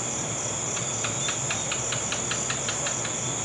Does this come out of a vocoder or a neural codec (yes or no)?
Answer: no